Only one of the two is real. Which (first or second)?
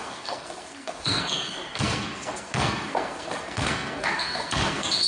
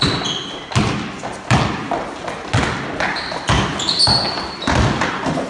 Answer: second